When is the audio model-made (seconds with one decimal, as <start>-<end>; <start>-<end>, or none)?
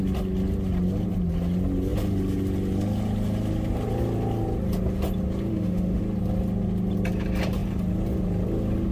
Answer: 5.5-6.0